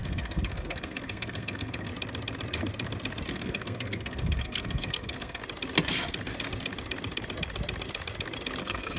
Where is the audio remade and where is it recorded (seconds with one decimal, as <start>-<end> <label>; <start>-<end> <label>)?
0.0-1.9 remade; 1.9-3.3 recorded; 3.3-5.4 remade; 5.4-8.6 recorded; 8.6-9.0 remade